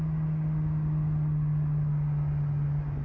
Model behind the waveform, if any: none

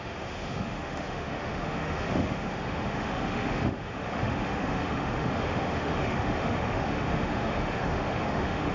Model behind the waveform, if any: autoencoder, DAC-VAE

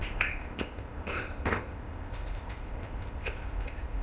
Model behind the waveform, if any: codec, ZipCodec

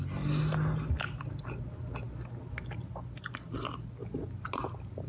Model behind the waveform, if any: none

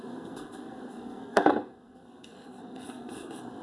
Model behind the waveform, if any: codec, SNAC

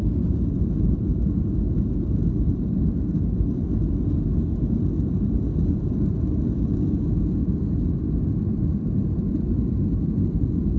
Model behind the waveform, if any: none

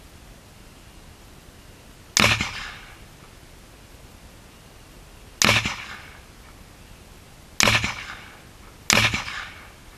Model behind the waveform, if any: none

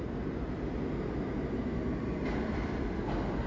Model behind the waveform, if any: none